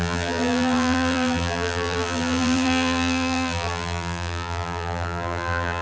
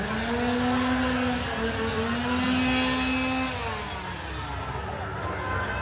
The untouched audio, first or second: second